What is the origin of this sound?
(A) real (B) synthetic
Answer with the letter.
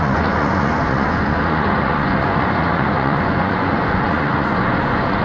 B